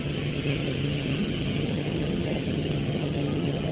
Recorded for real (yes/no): no